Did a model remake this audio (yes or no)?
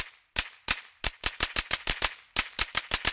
no